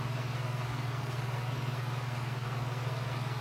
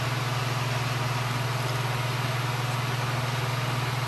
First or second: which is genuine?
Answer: second